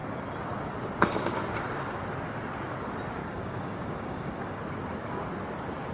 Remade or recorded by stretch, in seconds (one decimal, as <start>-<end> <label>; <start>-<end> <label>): 0.0-3.2 recorded; 3.2-4.6 remade; 4.6-5.9 recorded